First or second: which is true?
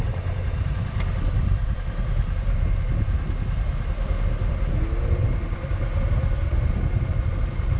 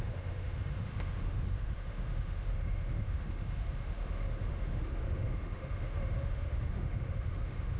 first